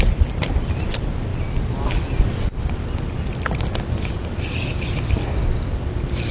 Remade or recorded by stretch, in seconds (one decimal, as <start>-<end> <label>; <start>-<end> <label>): 0.0-6.3 recorded

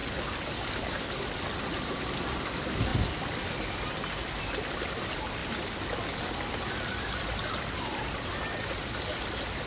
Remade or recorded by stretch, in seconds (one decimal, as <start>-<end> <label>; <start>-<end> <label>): 0.0-9.7 recorded

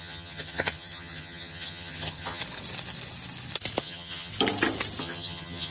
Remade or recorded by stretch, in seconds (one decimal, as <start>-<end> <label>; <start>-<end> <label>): 0.0-2.4 remade; 2.4-3.8 recorded; 3.8-4.3 remade; 4.3-5.0 recorded; 5.0-5.7 remade